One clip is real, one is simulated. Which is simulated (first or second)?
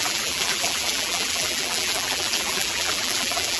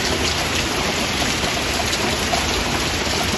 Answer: first